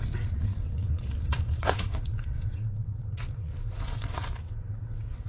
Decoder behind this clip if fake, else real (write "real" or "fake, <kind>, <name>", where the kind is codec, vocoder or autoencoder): fake, vocoder, WaveNeXt